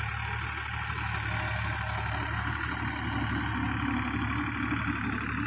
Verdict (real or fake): real